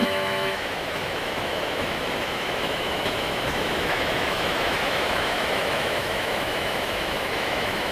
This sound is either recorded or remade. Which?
remade